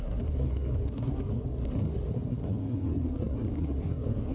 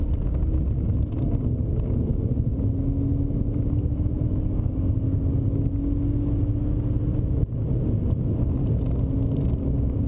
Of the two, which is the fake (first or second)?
first